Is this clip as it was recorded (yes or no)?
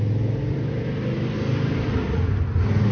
yes